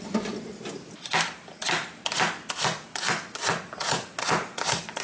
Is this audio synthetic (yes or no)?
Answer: no